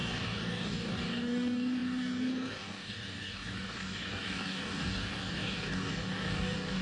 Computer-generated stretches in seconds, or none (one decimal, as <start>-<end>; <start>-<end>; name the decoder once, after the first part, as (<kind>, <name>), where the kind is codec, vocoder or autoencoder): 0.0-6.8 (codec, DAC)